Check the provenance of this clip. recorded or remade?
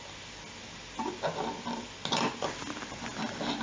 recorded